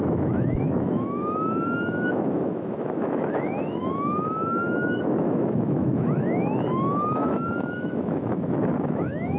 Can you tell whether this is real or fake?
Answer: fake